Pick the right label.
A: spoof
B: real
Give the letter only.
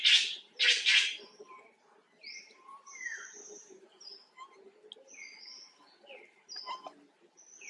B